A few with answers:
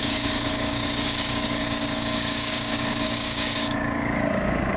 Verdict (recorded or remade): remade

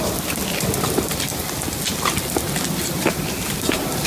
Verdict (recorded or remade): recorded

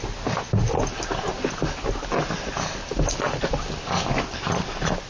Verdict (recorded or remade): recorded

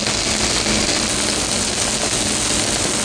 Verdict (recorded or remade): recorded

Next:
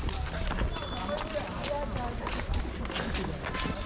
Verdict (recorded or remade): recorded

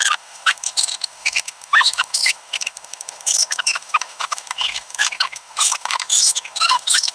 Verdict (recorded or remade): remade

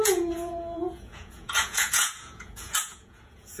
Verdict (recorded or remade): remade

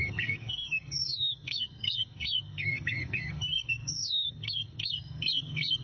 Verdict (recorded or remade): remade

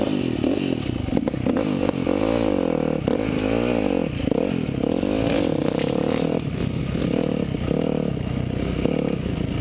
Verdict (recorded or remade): recorded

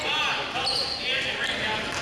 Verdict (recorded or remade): recorded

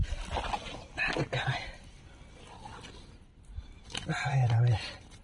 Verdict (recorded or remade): recorded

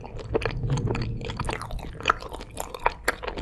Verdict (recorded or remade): recorded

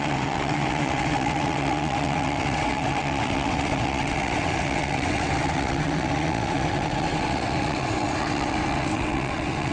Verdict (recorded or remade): remade